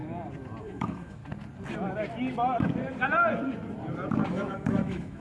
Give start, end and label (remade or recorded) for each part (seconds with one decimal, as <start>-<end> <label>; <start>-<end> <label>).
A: 0.0-0.6 recorded; 0.6-1.2 remade; 1.2-4.3 recorded; 4.3-5.2 remade